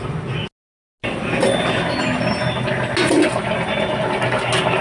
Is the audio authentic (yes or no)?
yes